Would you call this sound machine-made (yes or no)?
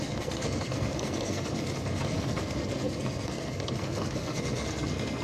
yes